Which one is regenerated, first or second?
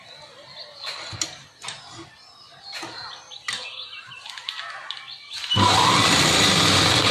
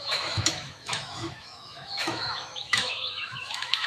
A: second